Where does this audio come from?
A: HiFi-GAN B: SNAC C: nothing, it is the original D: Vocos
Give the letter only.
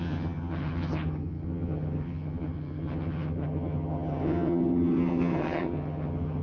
A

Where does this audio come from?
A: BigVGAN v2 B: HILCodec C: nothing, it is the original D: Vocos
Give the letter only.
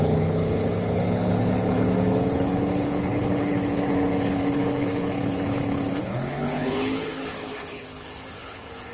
B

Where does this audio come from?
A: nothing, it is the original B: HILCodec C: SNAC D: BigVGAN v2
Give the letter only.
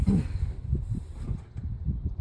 A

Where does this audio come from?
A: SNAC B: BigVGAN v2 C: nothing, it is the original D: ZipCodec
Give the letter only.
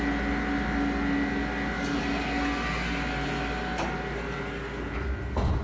C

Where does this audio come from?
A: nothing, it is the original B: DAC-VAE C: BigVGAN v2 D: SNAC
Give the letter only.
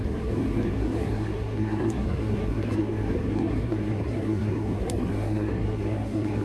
D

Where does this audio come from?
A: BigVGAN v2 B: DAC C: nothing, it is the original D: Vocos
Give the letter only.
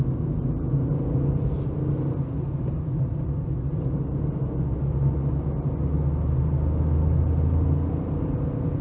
C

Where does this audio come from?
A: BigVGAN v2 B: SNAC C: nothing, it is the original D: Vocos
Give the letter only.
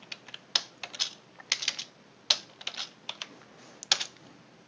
C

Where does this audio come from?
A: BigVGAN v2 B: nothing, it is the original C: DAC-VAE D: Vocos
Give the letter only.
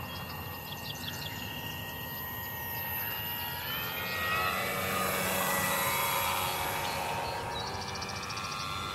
B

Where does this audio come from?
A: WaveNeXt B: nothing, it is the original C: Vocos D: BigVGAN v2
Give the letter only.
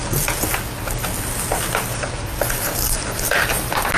B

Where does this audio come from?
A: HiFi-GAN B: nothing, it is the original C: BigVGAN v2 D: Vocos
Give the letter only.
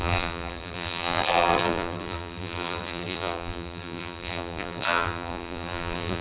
C